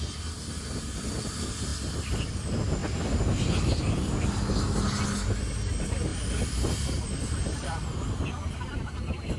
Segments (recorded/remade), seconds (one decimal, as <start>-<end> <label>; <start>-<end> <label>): 0.0-1.7 recorded; 1.7-2.3 remade; 2.3-6.1 recorded; 6.1-8.1 remade; 8.1-9.4 recorded